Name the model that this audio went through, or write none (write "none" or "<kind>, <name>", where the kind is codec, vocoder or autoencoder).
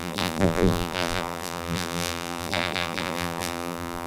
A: vocoder, BigVGAN v2